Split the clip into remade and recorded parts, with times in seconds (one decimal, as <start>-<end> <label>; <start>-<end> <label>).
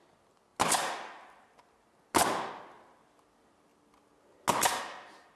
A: 0.0-5.3 recorded